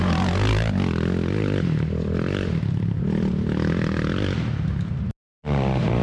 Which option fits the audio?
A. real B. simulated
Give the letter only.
B